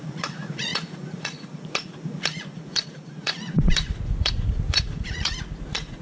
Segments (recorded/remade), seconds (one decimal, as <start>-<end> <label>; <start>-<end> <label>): 0.0-6.0 remade